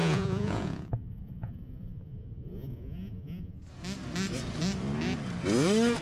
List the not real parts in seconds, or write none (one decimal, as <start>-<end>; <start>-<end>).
0.0-3.6